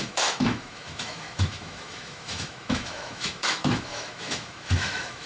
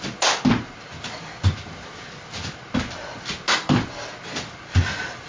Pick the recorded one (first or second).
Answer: second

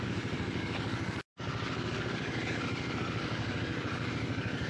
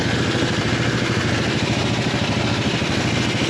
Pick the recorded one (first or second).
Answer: second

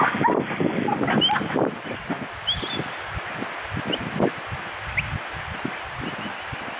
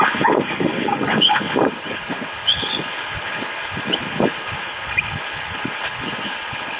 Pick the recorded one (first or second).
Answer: first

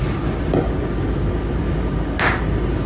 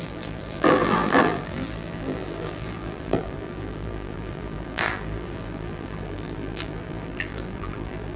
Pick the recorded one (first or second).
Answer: first